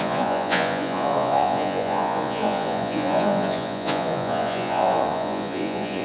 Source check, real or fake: fake